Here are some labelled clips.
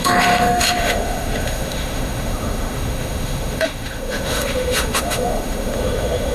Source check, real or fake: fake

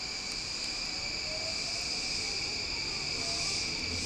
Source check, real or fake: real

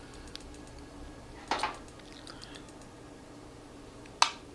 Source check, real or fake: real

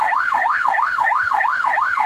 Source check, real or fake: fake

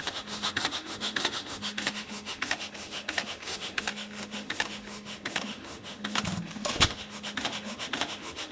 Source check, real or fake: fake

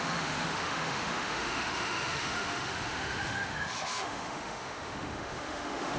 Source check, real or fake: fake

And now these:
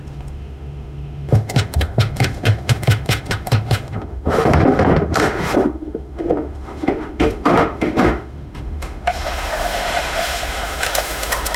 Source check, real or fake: fake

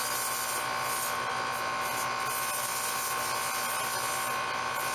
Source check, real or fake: real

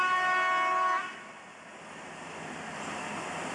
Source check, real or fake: real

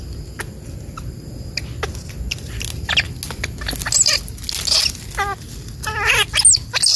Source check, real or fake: real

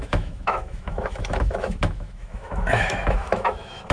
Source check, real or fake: fake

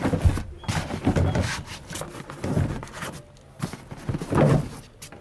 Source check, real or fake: real